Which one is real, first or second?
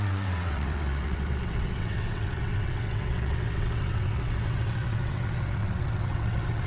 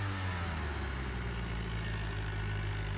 second